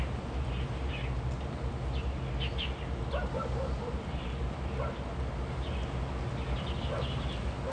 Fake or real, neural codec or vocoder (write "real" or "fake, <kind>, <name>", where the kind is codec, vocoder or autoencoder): real